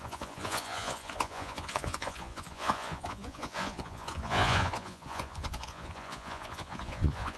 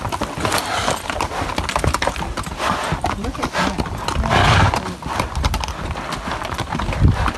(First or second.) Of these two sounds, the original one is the second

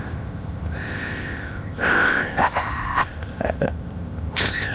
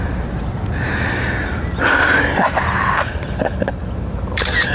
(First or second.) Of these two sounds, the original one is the second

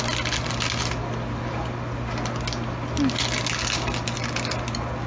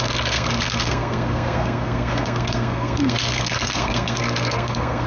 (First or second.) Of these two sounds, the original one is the first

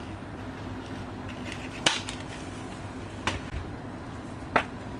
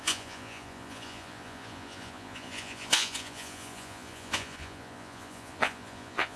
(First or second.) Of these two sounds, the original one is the first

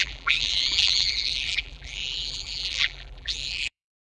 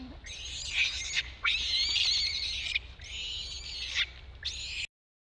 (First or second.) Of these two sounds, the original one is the second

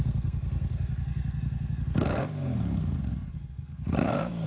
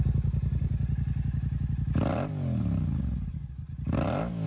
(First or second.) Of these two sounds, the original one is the second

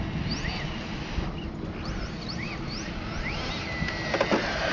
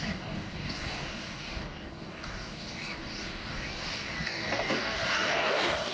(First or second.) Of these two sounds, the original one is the first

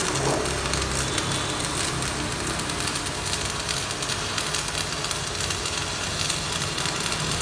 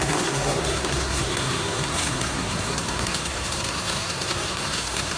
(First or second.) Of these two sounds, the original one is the first